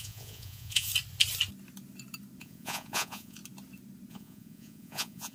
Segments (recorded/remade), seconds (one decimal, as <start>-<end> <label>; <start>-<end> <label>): 0.0-0.9 remade; 0.9-2.4 recorded; 2.4-3.4 remade; 3.4-4.1 recorded; 4.1-5.3 remade